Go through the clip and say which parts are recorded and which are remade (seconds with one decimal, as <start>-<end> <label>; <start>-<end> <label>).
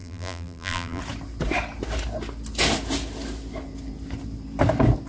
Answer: 0.0-1.0 remade; 1.0-5.1 recorded